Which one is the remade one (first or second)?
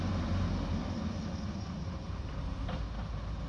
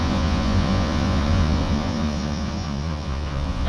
second